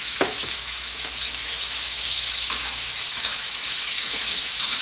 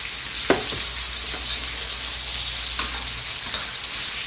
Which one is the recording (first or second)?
second